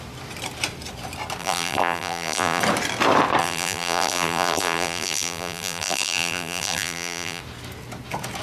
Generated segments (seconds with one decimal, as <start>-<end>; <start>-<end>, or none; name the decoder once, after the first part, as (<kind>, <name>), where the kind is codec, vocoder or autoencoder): 1.4-2.6 (vocoder, BigVGAN v2); 3.4-7.4

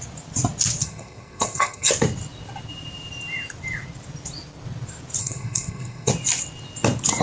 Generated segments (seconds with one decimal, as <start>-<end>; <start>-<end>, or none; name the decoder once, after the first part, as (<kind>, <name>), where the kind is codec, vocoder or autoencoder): 0.8-1.9 (codec, SNAC); 5.2-6.1